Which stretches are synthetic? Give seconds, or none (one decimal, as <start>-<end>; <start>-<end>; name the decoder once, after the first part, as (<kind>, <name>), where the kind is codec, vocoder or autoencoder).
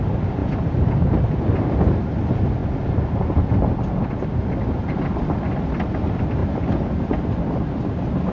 none